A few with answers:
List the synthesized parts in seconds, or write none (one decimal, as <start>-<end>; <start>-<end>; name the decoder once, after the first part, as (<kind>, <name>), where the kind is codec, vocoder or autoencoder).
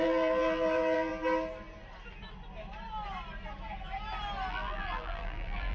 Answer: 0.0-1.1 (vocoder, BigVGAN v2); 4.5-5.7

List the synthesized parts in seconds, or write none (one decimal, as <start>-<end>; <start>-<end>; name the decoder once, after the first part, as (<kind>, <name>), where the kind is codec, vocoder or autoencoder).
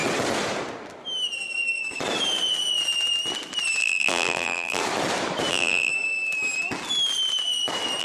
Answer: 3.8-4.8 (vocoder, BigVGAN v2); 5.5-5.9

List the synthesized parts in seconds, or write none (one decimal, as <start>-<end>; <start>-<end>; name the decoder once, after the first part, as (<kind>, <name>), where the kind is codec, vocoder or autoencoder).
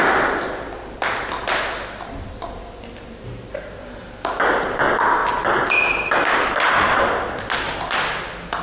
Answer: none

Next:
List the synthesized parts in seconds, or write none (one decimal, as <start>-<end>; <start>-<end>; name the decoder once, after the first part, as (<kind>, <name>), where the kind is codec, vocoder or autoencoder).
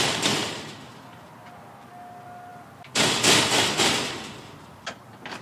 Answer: 0.4-0.9 (vocoder, BigVGAN v2); 2.5-3.5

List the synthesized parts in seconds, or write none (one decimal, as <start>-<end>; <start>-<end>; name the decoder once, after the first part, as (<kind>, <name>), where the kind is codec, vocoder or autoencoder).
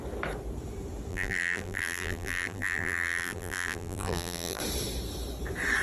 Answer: 1.1-4.6 (vocoder, BigVGAN v2)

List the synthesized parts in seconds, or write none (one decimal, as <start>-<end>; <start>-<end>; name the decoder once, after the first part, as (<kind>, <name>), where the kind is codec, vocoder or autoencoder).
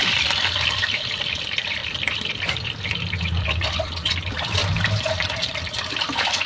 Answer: 0.0-4.6 (vocoder, BigVGAN v2); 5.1-6.5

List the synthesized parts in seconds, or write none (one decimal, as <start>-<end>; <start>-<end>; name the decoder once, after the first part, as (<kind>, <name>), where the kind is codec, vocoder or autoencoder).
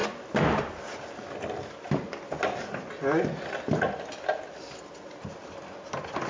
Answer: none